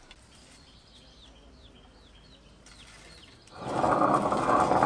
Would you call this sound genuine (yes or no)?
yes